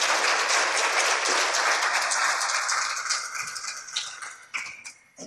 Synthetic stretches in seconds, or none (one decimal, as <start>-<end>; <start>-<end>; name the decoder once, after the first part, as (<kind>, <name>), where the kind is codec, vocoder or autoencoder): 0.0-5.3 (vocoder, BigVGAN v2)